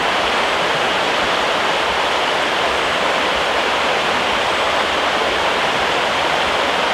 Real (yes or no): yes